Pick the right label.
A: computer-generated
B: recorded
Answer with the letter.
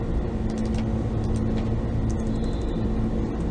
B